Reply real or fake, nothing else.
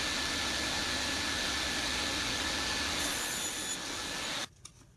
real